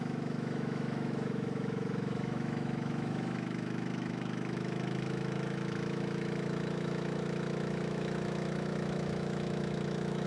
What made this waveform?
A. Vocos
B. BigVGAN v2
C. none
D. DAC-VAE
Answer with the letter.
D